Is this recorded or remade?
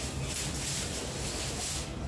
recorded